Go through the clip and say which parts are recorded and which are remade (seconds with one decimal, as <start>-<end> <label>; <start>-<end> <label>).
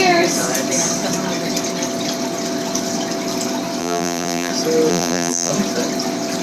0.0-3.8 recorded; 3.8-4.5 remade; 4.5-4.9 recorded; 4.9-5.5 remade; 5.5-6.4 recorded